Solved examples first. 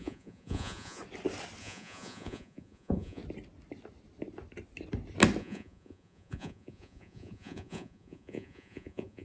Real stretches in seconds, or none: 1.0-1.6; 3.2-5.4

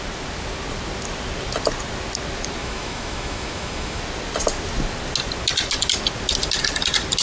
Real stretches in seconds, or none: 0.0-2.6; 4.0-7.2

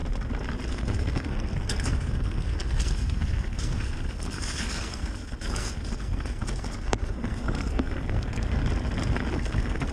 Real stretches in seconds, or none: 0.0-0.7; 8.6-9.3